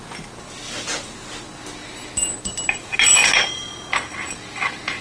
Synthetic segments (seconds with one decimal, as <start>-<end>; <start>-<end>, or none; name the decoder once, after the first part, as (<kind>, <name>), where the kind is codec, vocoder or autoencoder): none